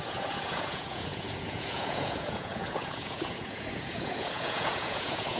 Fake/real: fake